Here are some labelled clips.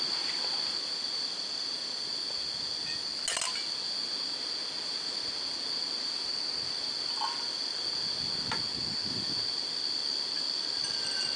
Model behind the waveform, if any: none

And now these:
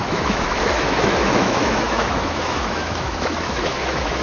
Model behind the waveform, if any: autoencoder, DAC-VAE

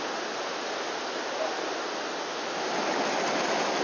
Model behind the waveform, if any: none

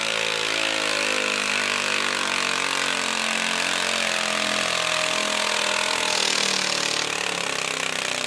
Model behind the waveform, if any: none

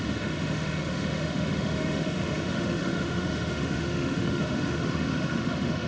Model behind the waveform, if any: autoencoder, DAC-VAE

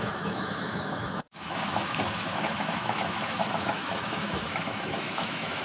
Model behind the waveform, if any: autoencoder, DAC-VAE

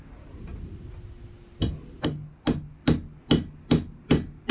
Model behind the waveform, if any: none